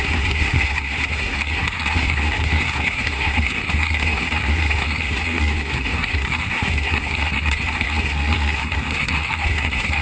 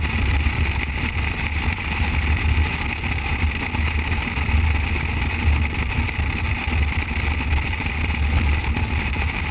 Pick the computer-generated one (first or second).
first